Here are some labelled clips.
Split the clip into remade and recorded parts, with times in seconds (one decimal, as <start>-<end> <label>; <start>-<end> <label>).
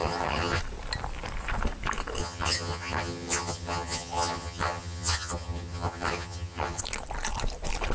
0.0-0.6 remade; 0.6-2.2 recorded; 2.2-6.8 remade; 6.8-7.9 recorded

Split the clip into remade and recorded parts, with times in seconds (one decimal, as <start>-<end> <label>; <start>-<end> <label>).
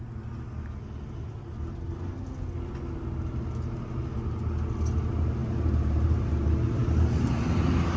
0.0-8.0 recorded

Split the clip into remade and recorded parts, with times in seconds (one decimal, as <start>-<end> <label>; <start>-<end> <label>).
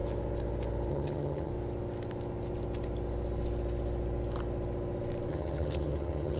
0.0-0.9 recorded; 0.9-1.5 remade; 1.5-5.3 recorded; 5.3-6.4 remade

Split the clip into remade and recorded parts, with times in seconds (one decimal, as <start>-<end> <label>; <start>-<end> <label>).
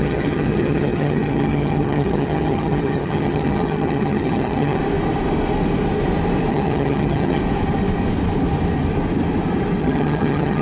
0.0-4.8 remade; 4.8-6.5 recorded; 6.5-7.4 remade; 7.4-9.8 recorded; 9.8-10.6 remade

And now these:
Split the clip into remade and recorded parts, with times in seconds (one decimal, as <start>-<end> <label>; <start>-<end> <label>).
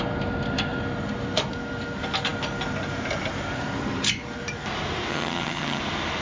0.0-5.1 recorded; 5.1-5.8 remade; 5.8-6.2 recorded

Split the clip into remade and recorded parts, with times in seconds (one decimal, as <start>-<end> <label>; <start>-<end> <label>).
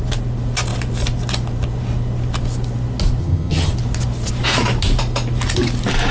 0.0-3.2 recorded; 3.2-3.7 remade; 3.7-6.1 recorded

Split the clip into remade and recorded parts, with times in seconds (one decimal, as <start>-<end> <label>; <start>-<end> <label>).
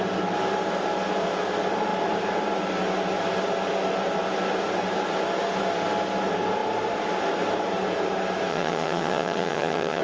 0.0-8.5 recorded; 8.5-10.0 remade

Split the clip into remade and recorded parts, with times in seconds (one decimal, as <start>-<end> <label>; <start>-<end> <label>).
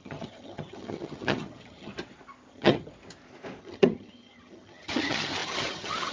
0.0-1.9 remade; 1.9-2.5 recorded; 2.5-2.9 remade; 2.9-3.6 recorded; 3.6-6.1 remade